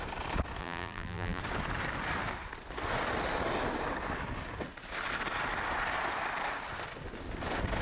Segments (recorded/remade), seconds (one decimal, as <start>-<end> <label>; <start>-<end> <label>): 0.0-0.6 recorded; 0.6-1.4 remade; 1.4-7.8 recorded